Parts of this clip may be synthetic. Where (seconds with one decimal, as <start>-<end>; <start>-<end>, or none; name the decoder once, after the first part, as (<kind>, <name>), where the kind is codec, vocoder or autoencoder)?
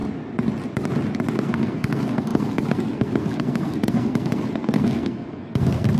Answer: 1.3-6.0 (codec, SNAC)